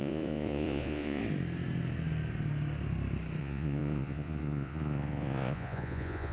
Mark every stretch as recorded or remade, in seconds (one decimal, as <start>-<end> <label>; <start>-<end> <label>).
0.0-1.2 remade; 1.2-3.4 recorded; 3.4-6.3 remade